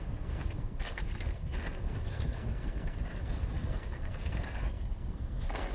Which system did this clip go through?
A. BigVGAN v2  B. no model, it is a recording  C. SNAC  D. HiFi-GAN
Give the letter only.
C